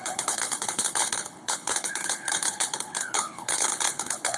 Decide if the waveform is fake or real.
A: fake